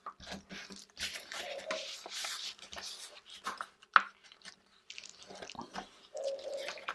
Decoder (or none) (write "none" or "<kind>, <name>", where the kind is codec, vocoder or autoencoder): none